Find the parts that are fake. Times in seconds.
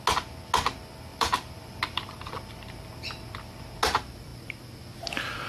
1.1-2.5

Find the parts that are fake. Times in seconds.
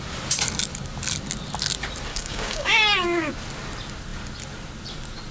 2.1-3.3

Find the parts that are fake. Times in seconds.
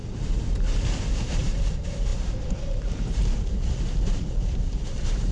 1.0-5.3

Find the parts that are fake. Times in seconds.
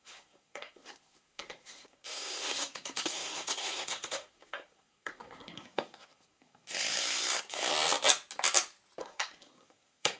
0.0-7.7; 9.0-10.2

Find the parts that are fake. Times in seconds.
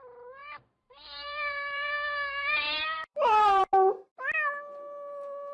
0.4-3.7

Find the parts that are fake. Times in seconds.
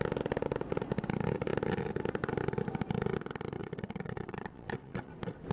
3.6-5.1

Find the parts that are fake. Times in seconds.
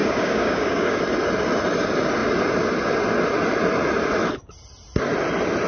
0.0-1.0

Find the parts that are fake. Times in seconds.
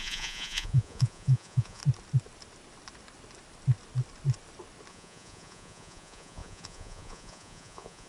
0.0-1.8; 4.9-8.1